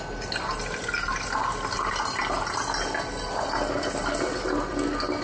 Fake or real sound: real